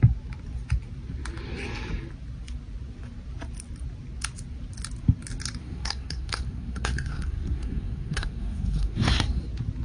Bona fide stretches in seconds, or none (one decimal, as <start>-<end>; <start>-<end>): 0.0-5.6; 9.4-9.8